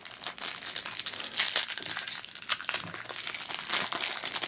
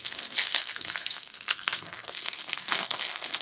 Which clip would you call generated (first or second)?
second